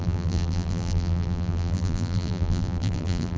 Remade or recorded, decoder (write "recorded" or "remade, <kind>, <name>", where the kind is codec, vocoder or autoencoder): remade, vocoder, BigVGAN v2